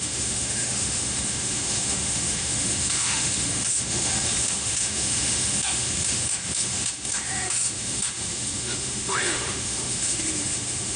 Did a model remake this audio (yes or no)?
yes